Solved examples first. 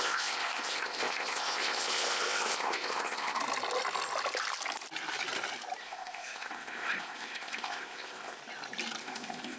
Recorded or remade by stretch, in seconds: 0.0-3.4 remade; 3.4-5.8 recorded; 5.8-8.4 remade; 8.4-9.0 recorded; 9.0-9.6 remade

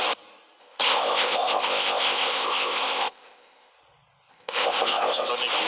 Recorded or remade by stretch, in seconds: 0.0-0.6 recorded; 0.6-3.7 remade; 3.7-4.3 recorded; 4.3-5.3 remade; 5.3-5.7 recorded

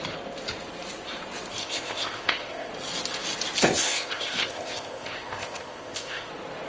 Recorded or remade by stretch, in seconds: 0.0-1.6 recorded; 1.6-2.7 remade; 2.7-3.6 recorded; 3.6-6.3 remade; 6.3-6.7 recorded

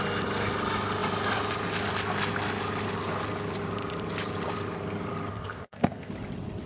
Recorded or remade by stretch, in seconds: 0.0-5.3 recorded; 5.3-6.1 remade; 6.1-6.7 recorded

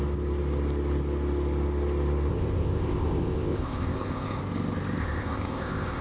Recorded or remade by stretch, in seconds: 0.0-2.3 recorded; 2.3-4.4 remade; 4.4-5.0 recorded; 5.0-6.0 remade

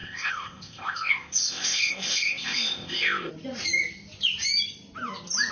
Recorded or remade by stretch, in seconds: 0.0-3.3 remade; 3.3-5.5 recorded